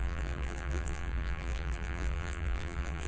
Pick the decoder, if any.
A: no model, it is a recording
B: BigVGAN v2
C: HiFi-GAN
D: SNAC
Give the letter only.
B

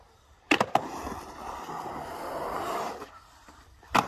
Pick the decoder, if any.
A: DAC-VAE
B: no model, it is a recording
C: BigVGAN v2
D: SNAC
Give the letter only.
B